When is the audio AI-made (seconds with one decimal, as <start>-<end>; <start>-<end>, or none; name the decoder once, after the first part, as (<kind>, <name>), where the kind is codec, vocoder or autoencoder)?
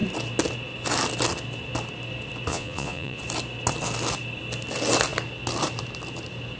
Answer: 2.5-3.2 (vocoder, Vocos)